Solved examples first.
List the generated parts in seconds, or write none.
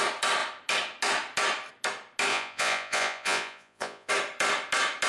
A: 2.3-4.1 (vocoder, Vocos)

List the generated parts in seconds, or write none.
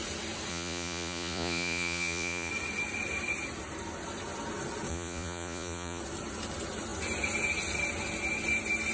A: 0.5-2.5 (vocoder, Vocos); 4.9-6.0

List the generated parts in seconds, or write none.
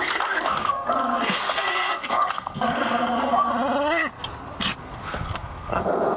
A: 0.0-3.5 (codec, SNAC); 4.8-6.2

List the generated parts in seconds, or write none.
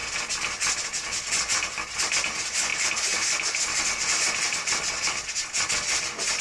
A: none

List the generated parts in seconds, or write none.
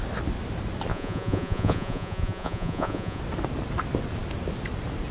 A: 0.9-3.2 (vocoder, Vocos)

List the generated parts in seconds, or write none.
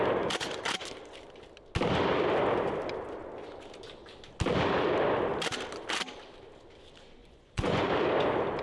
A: 7.2-7.9 (vocoder, Vocos)